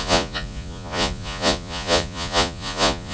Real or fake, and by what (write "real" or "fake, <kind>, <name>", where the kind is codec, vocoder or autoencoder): fake, vocoder, Vocos